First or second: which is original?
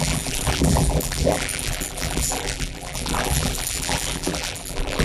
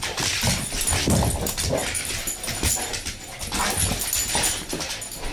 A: second